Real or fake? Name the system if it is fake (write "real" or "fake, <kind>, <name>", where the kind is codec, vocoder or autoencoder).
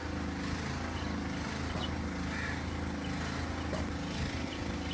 real